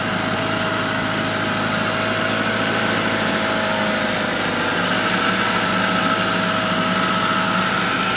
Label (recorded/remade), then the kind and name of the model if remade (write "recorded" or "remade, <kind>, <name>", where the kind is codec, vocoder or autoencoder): recorded